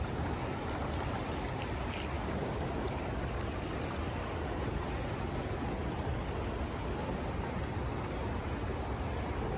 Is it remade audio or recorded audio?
recorded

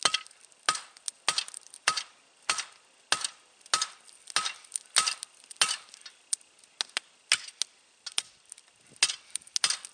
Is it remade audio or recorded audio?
recorded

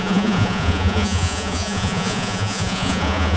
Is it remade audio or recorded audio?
remade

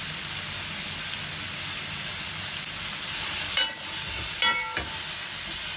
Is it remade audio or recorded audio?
recorded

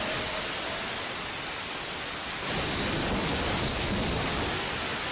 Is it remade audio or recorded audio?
recorded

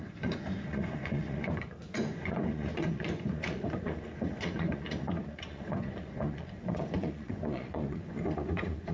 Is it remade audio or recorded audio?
remade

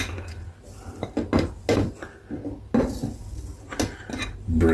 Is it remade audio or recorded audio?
recorded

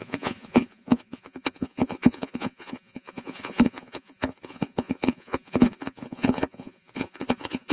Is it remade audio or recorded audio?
remade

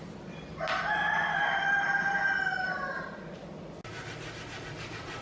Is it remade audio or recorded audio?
recorded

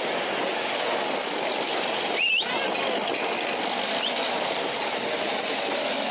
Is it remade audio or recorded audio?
recorded